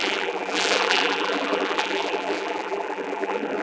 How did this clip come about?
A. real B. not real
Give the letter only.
B